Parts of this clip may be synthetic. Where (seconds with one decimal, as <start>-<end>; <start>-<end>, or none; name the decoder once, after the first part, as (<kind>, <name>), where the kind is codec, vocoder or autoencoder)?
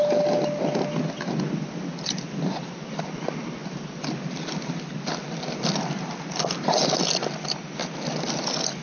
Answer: none